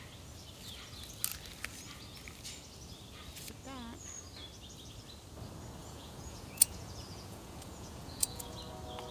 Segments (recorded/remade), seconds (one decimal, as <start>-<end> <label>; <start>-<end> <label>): 0.0-5.8 recorded; 5.8-8.6 remade; 8.6-9.1 recorded